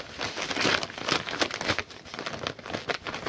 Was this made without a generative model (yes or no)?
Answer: yes